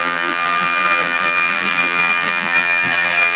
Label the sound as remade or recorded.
remade